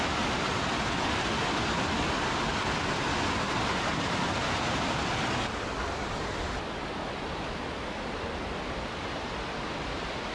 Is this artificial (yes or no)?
yes